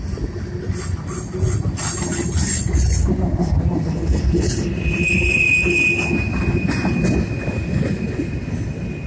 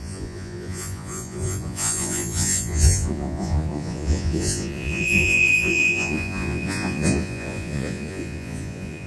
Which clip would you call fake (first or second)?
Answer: second